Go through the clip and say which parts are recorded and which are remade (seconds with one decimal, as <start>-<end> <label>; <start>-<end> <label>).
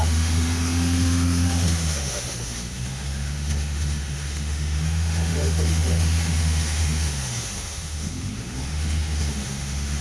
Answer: 0.0-10.0 remade